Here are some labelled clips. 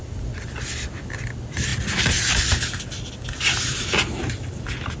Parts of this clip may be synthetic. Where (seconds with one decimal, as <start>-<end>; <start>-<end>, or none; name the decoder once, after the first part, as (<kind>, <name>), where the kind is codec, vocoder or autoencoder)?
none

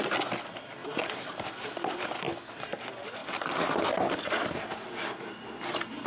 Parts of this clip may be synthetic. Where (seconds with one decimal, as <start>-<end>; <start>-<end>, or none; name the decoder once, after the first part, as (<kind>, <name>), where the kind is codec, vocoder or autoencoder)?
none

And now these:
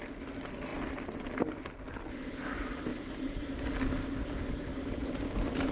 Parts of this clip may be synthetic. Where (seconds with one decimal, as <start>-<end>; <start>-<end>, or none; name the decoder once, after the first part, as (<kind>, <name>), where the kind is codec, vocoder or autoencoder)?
2.9-3.6 (vocoder, BigVGAN v2)

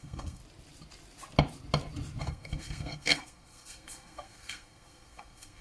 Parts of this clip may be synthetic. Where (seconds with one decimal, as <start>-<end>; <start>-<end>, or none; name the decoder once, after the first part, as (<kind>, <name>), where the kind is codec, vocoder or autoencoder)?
0.0-0.4 (codec, SNAC); 2.2-5.6